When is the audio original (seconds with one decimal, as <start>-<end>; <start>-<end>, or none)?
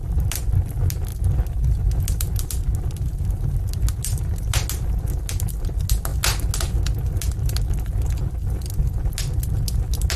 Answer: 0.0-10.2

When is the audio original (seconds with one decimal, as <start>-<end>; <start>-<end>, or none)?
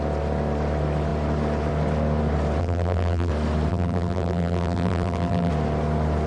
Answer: 0.0-2.6; 3.3-3.7; 5.5-6.3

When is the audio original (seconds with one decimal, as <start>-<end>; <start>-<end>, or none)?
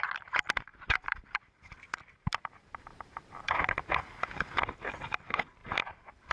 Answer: 0.0-0.7; 3.8-6.3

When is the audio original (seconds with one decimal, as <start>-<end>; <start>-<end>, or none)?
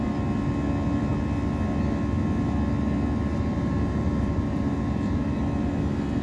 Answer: 0.0-3.3; 5.4-6.2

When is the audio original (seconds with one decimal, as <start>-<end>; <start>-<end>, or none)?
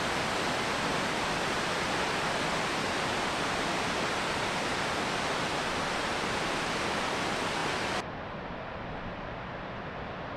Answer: 0.0-0.9; 4.7-10.4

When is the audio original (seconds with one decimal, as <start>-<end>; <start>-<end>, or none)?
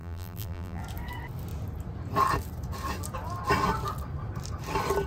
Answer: 0.8-5.1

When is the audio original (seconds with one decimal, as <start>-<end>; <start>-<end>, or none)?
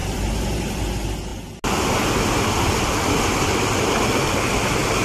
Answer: 0.8-5.0